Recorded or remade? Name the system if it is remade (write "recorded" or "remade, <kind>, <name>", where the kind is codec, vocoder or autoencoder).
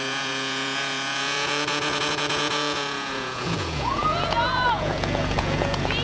remade, vocoder, Vocos